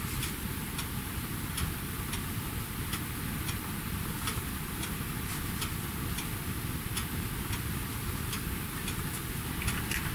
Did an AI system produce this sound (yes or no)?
no